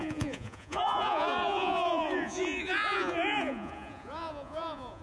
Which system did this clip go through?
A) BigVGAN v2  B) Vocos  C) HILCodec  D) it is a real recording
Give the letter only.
B